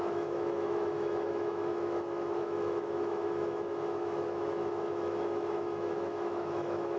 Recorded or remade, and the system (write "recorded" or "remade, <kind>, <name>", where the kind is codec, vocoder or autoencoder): remade, autoencoder, DAC-VAE